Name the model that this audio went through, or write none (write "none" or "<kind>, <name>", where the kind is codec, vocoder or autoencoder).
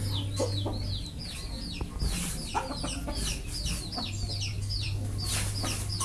none